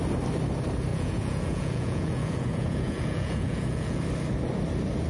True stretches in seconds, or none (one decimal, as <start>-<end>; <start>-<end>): 0.0-0.9; 4.0-5.1